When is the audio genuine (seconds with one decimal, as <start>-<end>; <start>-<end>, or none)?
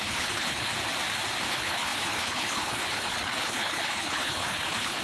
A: 0.7-1.5